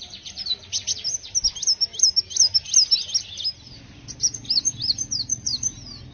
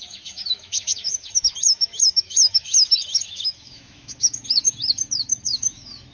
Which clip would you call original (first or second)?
first